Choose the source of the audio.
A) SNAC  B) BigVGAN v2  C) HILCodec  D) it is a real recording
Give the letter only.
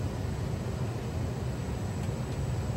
D